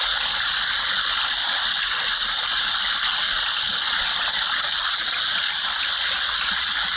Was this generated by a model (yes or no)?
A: no